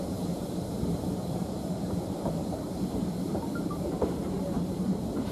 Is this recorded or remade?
remade